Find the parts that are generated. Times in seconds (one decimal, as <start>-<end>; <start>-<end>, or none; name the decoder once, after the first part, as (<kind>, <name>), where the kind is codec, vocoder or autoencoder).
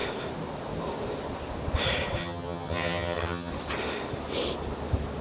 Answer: 2.2-3.5 (vocoder, HiFi-GAN)